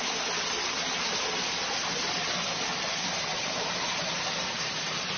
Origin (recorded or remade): recorded